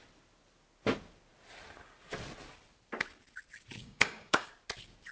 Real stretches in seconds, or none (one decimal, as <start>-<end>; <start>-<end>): 0.0-3.8; 4.5-5.1